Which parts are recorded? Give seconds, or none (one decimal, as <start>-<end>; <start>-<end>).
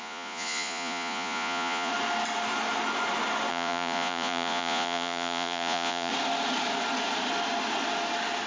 1.9-3.5; 6.1-8.5